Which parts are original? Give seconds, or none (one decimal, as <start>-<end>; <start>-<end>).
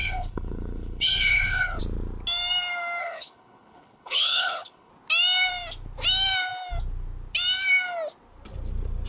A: 1.8-3.0; 4.9-9.1